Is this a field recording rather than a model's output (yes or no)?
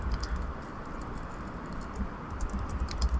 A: no